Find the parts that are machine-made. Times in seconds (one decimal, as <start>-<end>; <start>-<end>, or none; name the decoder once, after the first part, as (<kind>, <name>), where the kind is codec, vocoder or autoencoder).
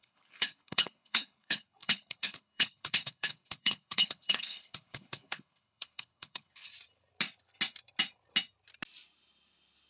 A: 0.0-6.7 (codec, HILCodec)